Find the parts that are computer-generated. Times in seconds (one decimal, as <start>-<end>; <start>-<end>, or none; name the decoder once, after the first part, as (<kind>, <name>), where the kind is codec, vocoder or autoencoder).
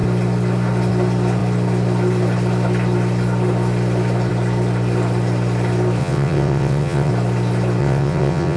6.0-7.1 (vocoder, WaveNeXt); 7.8-8.6